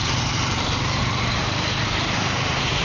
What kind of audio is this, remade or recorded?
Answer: remade